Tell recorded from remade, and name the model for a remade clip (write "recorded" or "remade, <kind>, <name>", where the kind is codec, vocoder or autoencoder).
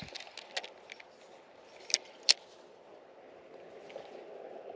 recorded